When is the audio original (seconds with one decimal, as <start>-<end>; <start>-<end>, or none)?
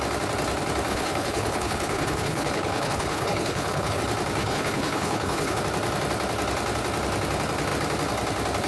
0.0-0.9; 4.0-4.4; 5.6-8.7